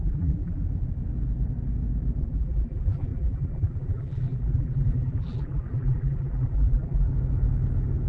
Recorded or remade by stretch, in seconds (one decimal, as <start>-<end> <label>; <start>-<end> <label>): 0.0-0.6 remade; 0.6-2.2 recorded; 2.2-7.1 remade; 7.1-8.1 recorded